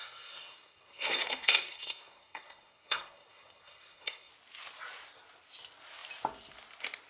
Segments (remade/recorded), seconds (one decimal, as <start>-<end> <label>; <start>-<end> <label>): 0.0-4.3 remade; 4.3-7.1 recorded